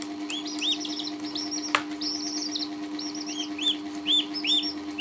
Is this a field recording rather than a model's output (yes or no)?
yes